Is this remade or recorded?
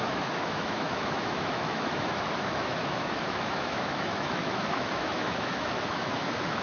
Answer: remade